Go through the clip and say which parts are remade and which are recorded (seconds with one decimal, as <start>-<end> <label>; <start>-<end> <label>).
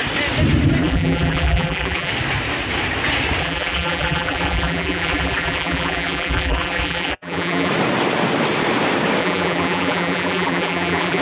0.0-0.8 recorded; 0.8-2.1 remade; 2.1-3.4 recorded; 3.4-7.7 remade; 7.7-9.2 recorded; 9.2-11.2 remade